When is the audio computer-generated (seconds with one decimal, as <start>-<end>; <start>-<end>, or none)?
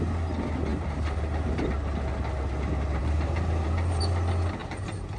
0.7-1.7; 3.0-4.0; 4.6-5.2